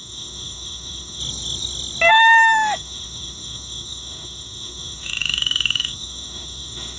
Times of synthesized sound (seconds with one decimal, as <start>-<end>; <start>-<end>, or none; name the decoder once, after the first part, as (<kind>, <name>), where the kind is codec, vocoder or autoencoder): 0.0-1.2 (autoencoder, DAC-VAE); 2.1-7.0